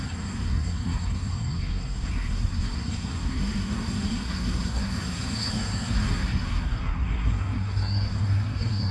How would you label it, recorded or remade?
remade